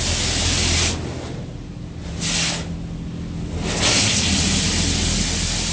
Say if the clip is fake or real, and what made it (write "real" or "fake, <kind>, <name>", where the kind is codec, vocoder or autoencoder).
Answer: real